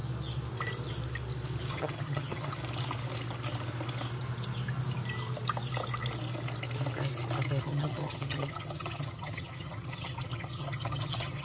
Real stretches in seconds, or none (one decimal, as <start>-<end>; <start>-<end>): 0.0-1.7; 2.6-7.6